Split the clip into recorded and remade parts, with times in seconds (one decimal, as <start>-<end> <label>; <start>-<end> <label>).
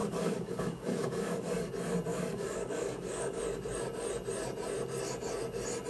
0.0-1.7 remade; 1.7-2.1 recorded; 2.1-3.4 remade; 3.4-5.9 recorded